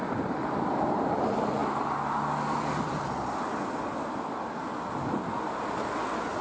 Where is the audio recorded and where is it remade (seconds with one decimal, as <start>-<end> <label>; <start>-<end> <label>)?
0.0-6.4 recorded